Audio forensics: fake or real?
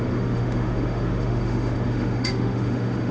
fake